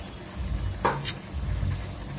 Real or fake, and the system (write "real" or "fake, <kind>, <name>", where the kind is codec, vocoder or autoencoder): real